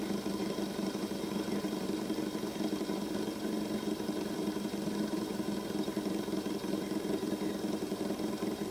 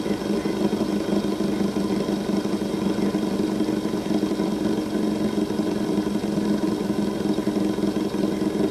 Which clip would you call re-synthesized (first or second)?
first